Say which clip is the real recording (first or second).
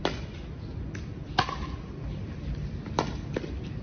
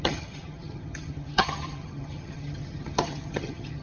first